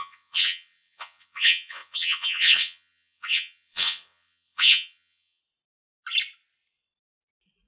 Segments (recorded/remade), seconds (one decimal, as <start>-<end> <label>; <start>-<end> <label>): 0.0-5.4 remade; 5.4-7.7 recorded

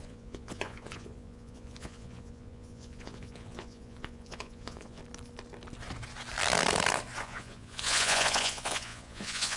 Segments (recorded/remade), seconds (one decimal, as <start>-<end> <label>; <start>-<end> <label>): 0.0-5.0 remade; 5.0-7.2 recorded; 7.2-9.6 remade

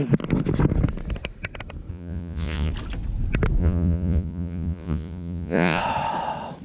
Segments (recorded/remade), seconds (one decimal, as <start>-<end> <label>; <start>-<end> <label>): 0.0-1.9 recorded; 1.9-2.7 remade; 2.7-3.6 recorded; 3.6-5.8 remade; 5.8-6.6 recorded

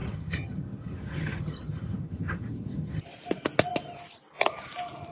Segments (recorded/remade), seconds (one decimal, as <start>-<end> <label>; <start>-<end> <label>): 0.0-3.0 remade; 3.0-5.1 recorded

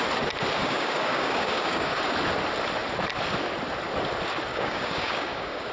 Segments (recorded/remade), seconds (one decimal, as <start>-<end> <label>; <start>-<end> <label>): 0.0-0.6 recorded; 0.6-2.0 remade; 2.0-4.5 recorded; 4.5-5.7 remade

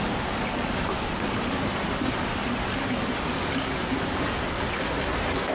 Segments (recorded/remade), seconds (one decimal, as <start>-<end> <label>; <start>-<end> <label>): 0.0-5.5 recorded

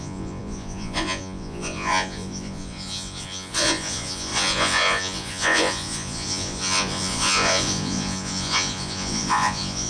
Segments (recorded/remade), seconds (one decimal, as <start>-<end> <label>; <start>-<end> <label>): 0.0-9.9 remade